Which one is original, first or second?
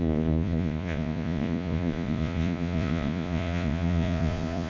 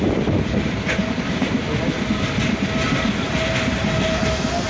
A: second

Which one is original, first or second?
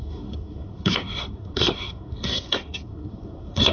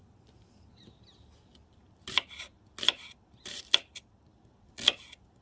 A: second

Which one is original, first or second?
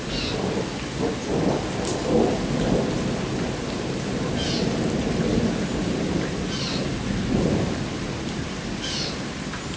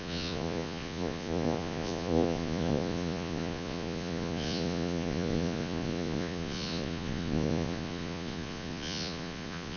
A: first